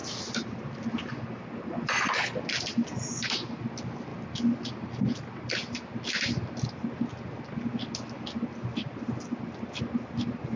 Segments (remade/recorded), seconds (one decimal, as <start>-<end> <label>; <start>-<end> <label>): 0.0-0.8 remade; 0.8-10.6 recorded